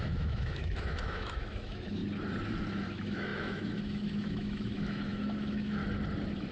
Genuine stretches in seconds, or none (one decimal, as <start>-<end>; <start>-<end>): 2.0-2.7; 5.8-6.5